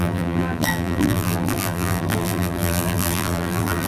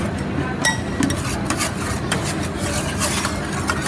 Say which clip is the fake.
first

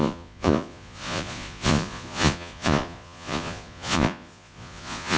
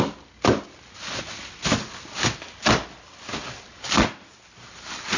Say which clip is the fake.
first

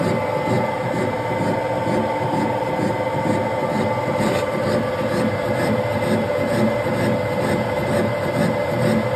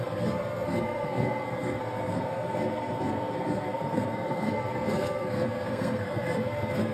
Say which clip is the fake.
second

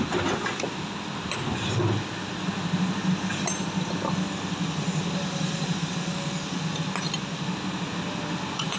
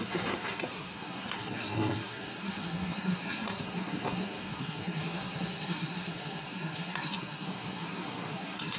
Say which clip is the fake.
second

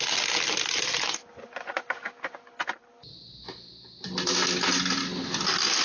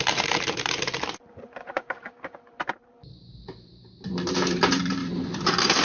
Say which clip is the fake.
second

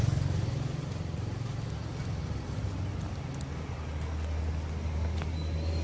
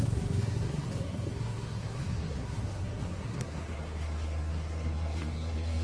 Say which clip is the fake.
second